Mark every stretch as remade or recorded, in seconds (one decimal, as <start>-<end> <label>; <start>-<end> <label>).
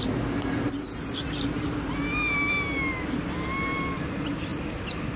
0.0-5.2 recorded